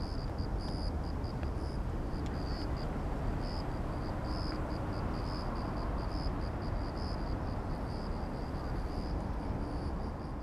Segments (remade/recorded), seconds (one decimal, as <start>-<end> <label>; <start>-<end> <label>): 0.0-10.4 recorded

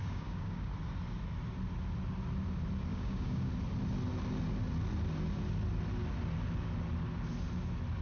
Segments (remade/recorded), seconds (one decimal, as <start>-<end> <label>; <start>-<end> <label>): 0.0-0.7 remade; 0.7-2.9 recorded; 2.9-3.5 remade; 3.5-8.0 recorded

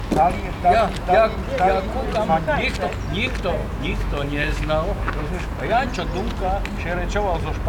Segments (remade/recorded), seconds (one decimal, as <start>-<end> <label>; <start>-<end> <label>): 0.0-3.6 recorded; 3.6-5.5 remade; 5.5-7.7 recorded

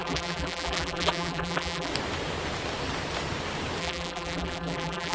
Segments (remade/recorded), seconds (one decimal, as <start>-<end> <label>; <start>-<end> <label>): 0.0-1.9 remade; 1.9-3.8 recorded; 3.8-5.1 remade

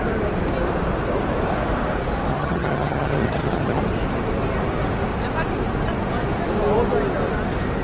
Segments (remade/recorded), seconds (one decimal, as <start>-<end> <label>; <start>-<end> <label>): 0.0-2.3 recorded; 2.3-3.8 remade; 3.8-7.8 recorded

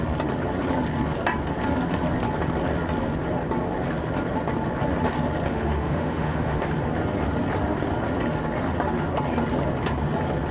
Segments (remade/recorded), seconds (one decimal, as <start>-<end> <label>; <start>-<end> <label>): 0.0-5.5 recorded; 5.5-6.7 remade; 6.7-10.5 recorded